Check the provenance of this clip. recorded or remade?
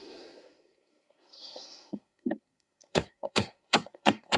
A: remade